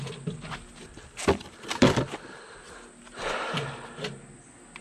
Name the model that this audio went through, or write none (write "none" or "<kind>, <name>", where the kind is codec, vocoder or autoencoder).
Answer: none